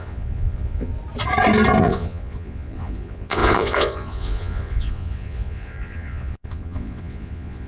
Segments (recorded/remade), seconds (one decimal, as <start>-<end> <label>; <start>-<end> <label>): 0.0-0.9 remade; 0.9-1.8 recorded; 1.8-7.7 remade